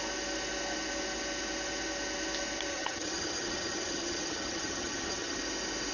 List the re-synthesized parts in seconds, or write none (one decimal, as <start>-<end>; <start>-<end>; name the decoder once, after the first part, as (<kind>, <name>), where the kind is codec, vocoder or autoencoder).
2.7-5.4 (vocoder, HiFi-GAN)